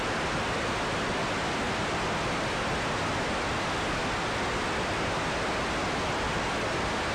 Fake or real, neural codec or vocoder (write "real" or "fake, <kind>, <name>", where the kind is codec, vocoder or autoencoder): real